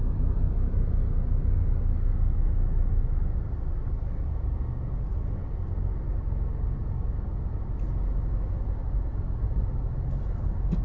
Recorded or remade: recorded